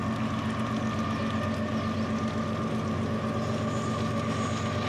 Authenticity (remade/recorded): recorded